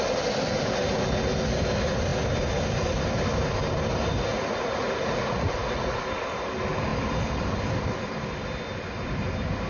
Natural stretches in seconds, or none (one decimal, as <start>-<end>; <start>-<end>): 0.0-4.3; 6.0-9.7